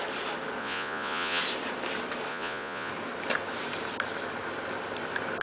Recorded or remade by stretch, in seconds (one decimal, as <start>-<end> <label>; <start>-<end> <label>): 0.0-0.6 recorded; 0.6-1.4 remade; 1.4-2.3 recorded; 2.3-2.9 remade; 2.9-5.4 recorded